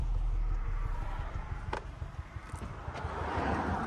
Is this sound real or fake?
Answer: fake